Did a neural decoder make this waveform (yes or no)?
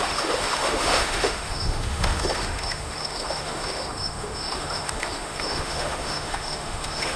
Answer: yes